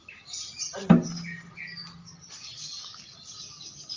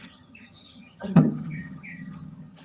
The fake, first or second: second